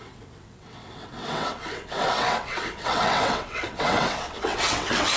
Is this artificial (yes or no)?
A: yes